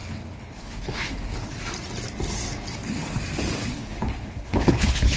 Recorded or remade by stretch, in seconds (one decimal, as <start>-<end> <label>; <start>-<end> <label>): 0.0-1.6 remade; 1.6-2.7 recorded; 2.7-3.2 remade; 3.2-3.6 recorded; 3.6-5.2 remade